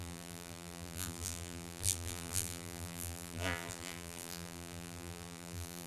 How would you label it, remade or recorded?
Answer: remade